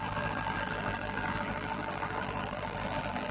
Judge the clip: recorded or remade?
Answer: remade